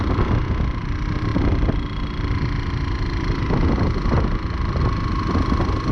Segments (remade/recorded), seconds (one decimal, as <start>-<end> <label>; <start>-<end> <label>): 0.0-5.9 recorded